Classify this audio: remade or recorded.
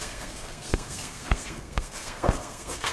remade